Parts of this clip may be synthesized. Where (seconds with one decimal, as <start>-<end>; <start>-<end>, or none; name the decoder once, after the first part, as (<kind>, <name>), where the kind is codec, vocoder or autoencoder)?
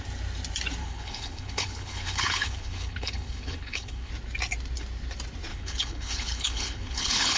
0.8-4.1 (codec, HILCodec); 5.5-7.4